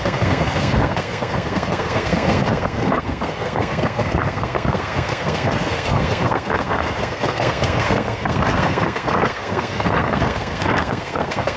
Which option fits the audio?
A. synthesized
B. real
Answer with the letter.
A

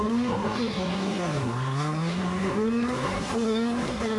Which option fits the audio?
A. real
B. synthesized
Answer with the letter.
B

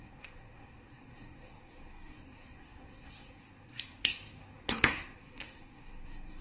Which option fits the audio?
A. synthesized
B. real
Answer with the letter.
A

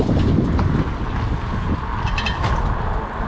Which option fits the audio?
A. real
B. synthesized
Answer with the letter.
A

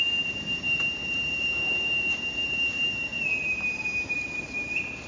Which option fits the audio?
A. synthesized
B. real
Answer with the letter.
A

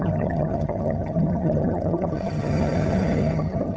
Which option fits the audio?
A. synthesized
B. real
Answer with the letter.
A